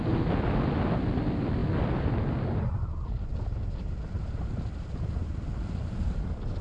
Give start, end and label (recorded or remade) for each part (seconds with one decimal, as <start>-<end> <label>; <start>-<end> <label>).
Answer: 0.0-6.6 recorded